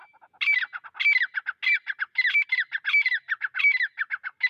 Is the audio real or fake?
real